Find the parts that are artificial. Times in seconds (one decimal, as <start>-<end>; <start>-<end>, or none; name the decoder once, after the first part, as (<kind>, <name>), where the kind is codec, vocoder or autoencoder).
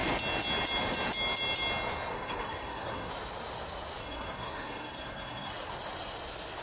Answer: 2.1-3.1 (codec, SNAC); 4.0-5.5